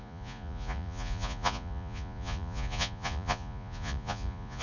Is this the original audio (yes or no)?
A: no